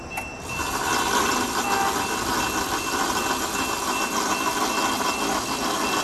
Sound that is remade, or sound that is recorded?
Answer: recorded